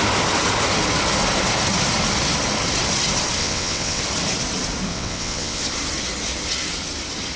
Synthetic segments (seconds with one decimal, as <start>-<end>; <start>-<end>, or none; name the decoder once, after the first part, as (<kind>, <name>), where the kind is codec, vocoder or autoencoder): 3.4-4.0 (vocoder, WaveNeXt); 4.9-5.6